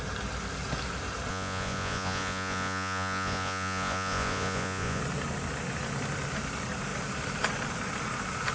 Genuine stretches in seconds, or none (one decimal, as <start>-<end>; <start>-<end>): 0.0-1.3; 5.0-8.5